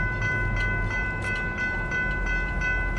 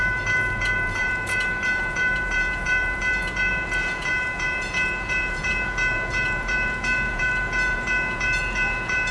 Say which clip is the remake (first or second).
second